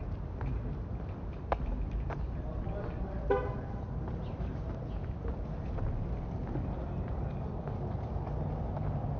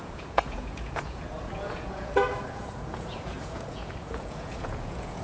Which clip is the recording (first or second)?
first